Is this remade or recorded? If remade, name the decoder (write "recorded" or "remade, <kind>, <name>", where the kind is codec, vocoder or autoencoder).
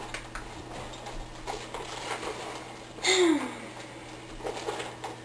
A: recorded